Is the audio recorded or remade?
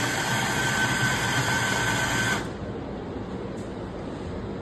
recorded